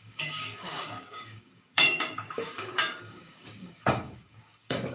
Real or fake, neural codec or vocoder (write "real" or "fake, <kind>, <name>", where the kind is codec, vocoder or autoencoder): fake, codec, DAC